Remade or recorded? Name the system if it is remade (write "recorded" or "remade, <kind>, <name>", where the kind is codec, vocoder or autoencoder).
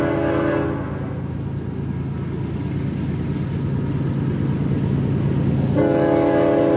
recorded